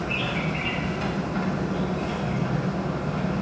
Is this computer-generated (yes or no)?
no